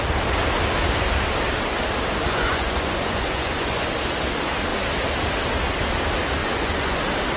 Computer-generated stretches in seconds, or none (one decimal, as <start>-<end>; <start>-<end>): 2.3-3.9; 6.4-7.0